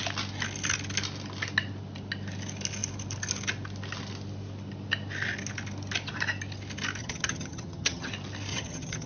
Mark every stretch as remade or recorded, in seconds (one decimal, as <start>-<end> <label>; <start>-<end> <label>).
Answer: 0.0-7.0 recorded; 7.0-8.1 remade; 8.1-8.5 recorded; 8.5-9.1 remade